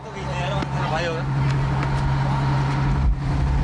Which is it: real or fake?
real